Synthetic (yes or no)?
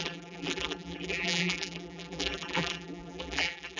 yes